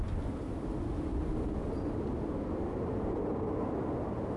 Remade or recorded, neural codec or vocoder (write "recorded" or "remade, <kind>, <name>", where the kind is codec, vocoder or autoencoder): recorded